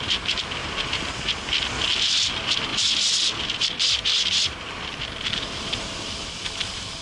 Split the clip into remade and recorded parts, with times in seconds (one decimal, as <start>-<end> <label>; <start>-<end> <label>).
0.0-0.6 recorded; 0.6-1.2 remade; 1.2-2.7 recorded; 2.7-7.0 remade